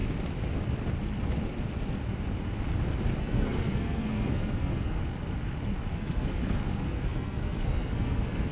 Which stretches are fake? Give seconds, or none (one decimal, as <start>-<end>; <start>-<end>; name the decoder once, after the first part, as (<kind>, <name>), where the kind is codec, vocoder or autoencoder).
3.2-5.0 (codec, SNAC); 5.9-8.5